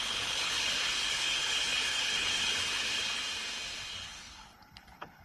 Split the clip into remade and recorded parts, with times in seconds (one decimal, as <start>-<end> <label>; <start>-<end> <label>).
0.0-3.2 remade; 3.2-3.9 recorded; 3.9-5.2 remade